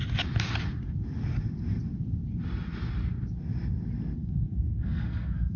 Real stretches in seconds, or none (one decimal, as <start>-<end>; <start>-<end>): 0.0-4.2